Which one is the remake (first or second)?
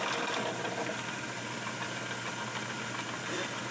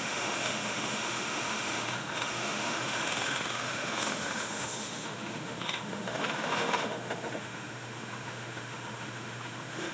second